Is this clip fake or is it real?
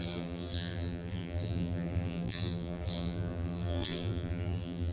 fake